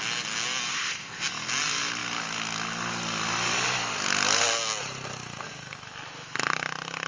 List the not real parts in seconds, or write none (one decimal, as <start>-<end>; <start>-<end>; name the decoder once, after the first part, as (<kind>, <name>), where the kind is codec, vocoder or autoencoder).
0.7-1.2 (codec, ZipCodec)

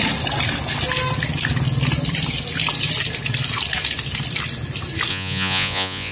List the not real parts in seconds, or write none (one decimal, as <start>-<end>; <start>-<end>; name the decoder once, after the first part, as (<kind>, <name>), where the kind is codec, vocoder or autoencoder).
5.1-6.1 (vocoder, Vocos)